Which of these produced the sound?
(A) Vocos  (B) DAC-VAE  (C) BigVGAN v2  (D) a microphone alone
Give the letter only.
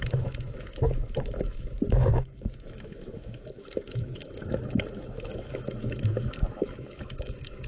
B